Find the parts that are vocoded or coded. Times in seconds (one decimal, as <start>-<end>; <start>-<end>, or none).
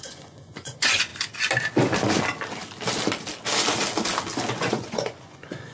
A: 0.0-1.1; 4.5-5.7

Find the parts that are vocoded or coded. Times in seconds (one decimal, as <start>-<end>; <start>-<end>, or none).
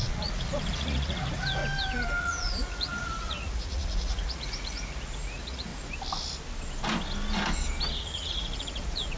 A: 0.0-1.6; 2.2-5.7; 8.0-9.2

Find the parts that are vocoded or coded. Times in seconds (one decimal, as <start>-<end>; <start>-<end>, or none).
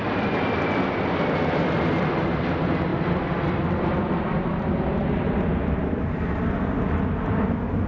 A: none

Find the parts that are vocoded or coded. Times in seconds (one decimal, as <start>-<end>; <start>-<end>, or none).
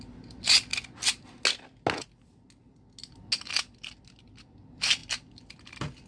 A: none